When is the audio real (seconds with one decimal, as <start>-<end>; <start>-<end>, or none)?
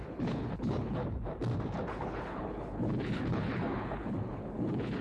1.0-1.9